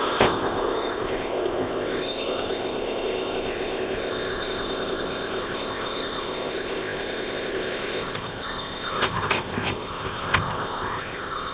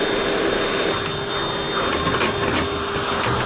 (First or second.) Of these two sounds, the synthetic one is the first